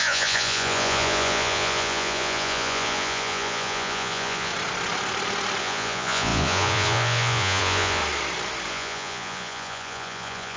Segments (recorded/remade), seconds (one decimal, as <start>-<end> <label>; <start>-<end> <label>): 0.0-4.5 remade; 4.5-5.6 recorded; 5.6-8.0 remade; 8.0-8.7 recorded; 8.7-10.6 remade